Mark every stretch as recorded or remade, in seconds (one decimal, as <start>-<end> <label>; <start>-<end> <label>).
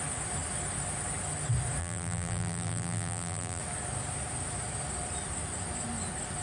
0.0-1.8 recorded; 1.8-3.6 remade; 3.6-6.4 recorded